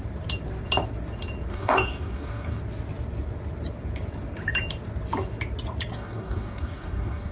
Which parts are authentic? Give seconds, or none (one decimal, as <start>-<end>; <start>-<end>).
0.0-1.5; 2.6-5.9